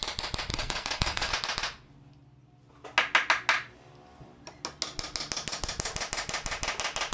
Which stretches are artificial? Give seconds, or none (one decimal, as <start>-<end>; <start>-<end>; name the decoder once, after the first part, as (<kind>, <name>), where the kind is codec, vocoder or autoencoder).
0.5-1.3 (codec, SNAC)